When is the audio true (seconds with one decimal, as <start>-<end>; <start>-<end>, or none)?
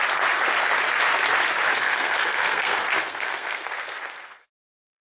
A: 0.0-1.7